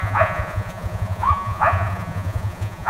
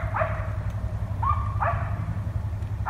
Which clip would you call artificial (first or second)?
first